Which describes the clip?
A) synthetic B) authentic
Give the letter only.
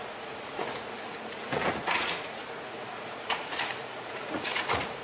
A